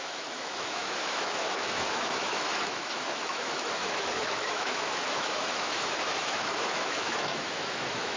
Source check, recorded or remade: remade